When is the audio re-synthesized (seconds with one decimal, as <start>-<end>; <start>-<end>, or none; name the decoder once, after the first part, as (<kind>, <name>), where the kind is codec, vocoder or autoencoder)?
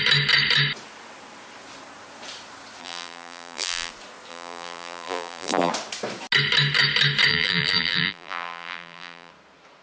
2.8-3.9 (vocoder, BigVGAN v2); 4.3-5.7; 7.3-9.3